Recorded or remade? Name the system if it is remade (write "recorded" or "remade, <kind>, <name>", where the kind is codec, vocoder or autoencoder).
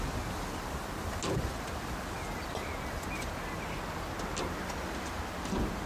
recorded